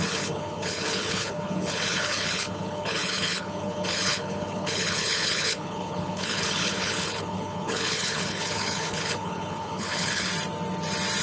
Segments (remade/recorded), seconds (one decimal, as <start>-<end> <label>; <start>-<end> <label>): 0.0-10.3 remade; 10.3-11.2 recorded